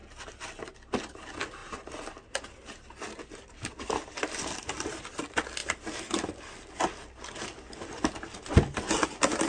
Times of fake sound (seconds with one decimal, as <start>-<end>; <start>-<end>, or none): none